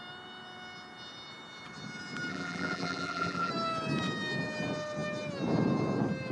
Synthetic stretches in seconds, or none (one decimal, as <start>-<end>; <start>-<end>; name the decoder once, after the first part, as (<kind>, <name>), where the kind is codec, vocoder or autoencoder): 2.3-3.5 (vocoder, BigVGAN v2)